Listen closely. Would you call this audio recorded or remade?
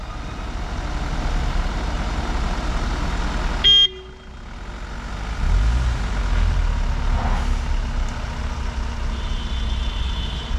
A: recorded